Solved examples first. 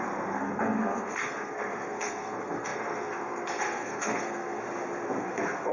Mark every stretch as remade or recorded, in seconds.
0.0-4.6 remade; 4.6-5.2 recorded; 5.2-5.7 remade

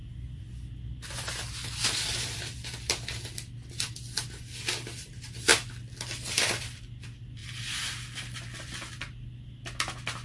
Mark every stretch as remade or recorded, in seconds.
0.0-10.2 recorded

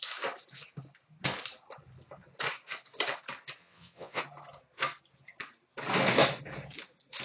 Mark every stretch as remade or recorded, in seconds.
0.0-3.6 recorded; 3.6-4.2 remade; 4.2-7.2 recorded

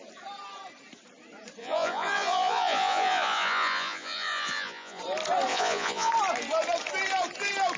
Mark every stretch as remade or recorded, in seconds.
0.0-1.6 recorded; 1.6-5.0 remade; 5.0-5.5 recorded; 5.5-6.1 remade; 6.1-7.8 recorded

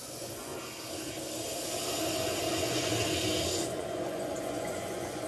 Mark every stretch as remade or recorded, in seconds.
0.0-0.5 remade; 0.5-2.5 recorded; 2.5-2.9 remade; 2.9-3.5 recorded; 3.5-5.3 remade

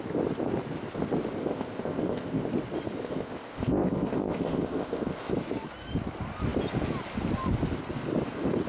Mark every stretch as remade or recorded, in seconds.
0.0-1.4 recorded; 1.4-2.5 remade; 2.5-3.0 recorded; 3.0-5.3 remade; 5.3-8.7 recorded